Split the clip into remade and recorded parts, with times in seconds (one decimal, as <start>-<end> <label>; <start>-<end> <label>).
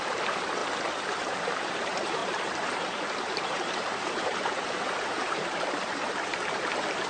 0.0-0.6 remade; 0.6-1.1 recorded; 1.1-2.2 remade; 2.2-3.1 recorded; 3.1-7.1 remade